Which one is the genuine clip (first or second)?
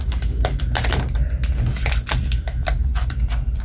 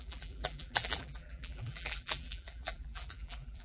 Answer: first